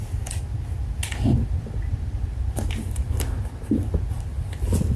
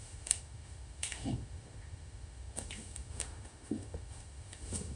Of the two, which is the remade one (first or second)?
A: second